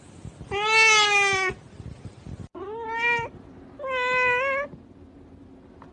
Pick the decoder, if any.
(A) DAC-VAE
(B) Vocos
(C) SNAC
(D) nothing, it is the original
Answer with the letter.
D